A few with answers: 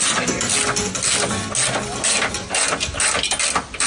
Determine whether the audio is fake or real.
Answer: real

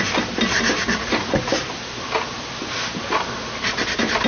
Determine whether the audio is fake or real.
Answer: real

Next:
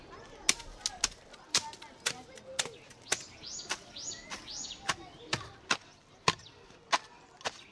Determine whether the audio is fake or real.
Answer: real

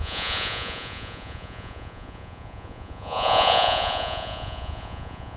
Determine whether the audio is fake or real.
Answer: fake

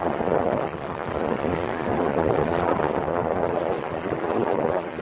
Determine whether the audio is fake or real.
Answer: fake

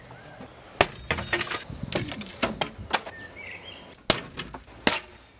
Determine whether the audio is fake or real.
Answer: real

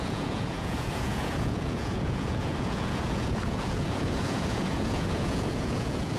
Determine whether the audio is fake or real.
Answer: fake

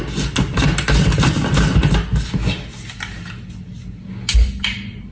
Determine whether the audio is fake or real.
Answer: real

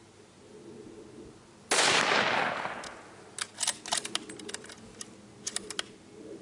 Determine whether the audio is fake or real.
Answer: real